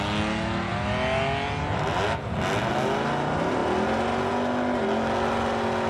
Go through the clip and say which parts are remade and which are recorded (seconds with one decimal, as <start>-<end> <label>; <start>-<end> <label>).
0.0-5.9 recorded